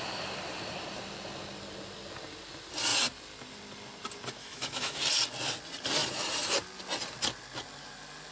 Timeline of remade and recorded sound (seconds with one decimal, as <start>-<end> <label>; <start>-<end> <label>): 0.0-4.4 recorded; 4.4-5.0 remade; 5.0-8.3 recorded